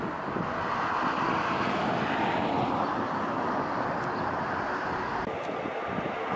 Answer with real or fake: real